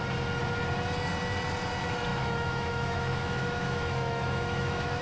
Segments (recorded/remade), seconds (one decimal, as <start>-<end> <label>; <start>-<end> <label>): 0.0-2.1 recorded; 2.1-5.0 remade